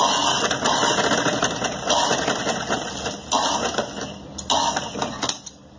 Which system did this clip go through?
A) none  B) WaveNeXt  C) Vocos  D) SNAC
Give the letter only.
A